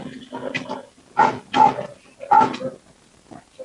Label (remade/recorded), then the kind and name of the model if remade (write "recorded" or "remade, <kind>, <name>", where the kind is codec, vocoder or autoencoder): recorded